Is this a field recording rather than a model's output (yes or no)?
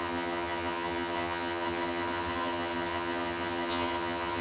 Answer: no